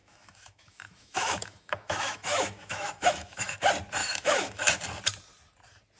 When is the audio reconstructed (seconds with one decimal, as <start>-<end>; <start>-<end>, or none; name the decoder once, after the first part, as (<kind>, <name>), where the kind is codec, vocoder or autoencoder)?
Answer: 0.0-3.6 (autoencoder, DAC-VAE); 4.0-4.7